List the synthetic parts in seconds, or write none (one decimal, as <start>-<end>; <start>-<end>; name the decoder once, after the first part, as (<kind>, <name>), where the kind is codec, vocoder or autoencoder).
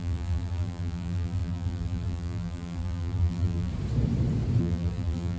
0.0-3.7 (vocoder, BigVGAN v2); 4.6-5.4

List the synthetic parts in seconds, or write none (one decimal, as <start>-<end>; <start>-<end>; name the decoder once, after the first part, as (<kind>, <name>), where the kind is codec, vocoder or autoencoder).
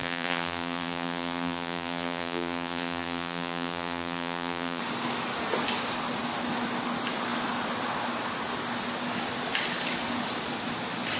0.0-4.8 (vocoder, BigVGAN v2)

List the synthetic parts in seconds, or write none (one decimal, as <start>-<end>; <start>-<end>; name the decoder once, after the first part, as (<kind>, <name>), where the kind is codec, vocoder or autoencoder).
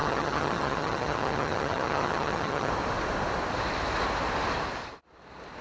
0.0-2.7 (vocoder, HiFi-GAN)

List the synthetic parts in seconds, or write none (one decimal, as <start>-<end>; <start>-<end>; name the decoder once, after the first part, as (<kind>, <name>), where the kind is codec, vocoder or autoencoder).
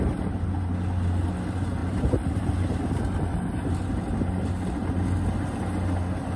1.8-2.4 (vocoder, BigVGAN v2)